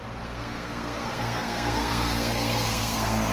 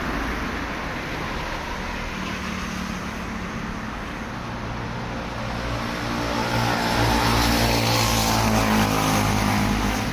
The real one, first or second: second